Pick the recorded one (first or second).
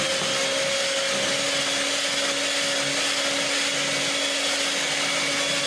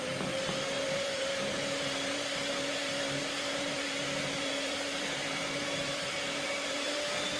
first